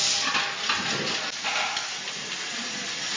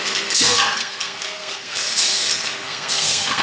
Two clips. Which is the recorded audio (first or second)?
first